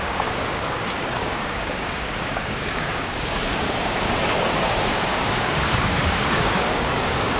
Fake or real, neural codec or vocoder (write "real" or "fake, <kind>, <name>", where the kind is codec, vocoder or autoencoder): fake, codec, DAC